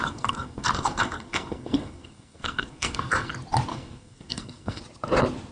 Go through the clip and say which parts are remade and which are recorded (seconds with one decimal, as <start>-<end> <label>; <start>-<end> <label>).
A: 0.0-3.3 remade; 3.3-3.7 recorded; 3.7-4.8 remade; 4.8-5.5 recorded